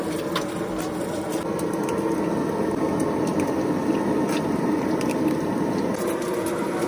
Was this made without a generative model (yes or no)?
yes